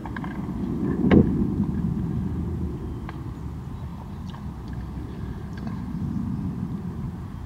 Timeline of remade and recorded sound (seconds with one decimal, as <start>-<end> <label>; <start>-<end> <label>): 0.0-1.0 remade; 1.0-3.9 recorded; 3.9-5.9 remade; 5.9-7.5 recorded